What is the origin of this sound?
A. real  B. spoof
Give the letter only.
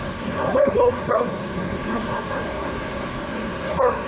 B